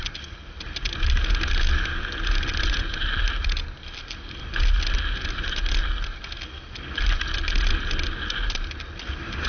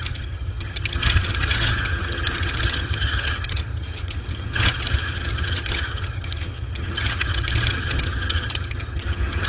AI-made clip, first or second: second